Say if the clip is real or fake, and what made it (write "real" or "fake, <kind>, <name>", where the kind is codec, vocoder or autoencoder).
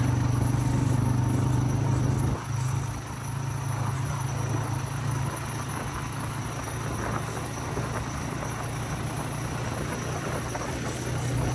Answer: real